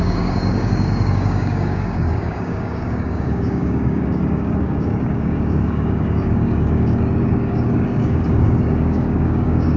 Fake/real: fake